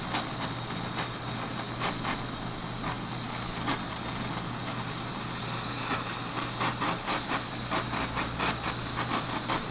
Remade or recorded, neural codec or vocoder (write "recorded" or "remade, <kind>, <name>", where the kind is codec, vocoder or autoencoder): recorded